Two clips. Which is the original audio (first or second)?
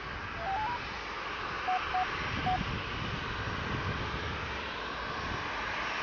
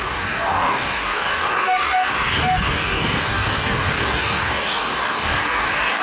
first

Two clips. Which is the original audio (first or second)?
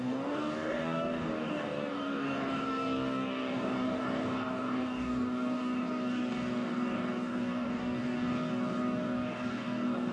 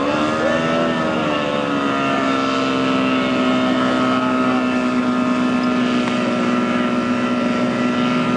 second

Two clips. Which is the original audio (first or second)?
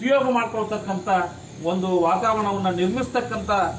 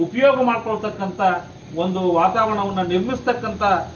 second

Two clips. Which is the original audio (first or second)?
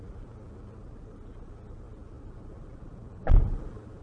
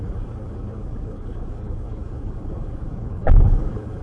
first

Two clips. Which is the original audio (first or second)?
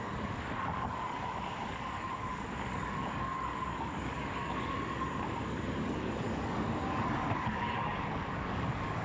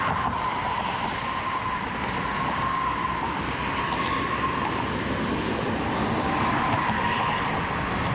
second